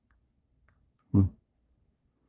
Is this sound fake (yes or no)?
yes